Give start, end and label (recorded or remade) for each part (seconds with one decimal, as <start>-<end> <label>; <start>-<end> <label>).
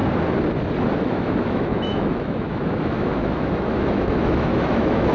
0.0-1.0 recorded; 1.0-5.1 remade